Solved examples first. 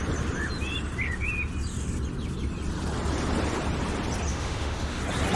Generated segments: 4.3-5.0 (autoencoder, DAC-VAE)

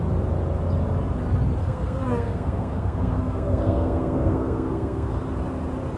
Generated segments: 1.6-5.2 (codec, SNAC)

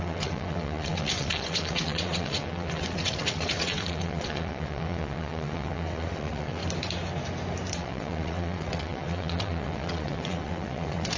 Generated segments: 0.0-6.6 (vocoder, WaveNeXt); 7.7-11.2